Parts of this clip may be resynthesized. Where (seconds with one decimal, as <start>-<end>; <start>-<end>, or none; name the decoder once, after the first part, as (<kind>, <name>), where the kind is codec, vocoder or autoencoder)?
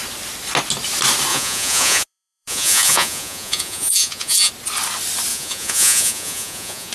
1.3-4.5 (vocoder, Vocos); 5.3-6.9